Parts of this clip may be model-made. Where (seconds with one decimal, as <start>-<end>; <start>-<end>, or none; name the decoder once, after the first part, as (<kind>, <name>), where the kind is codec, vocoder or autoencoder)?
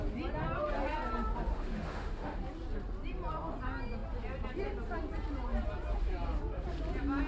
1.5-2.4 (autoencoder, DAC-VAE)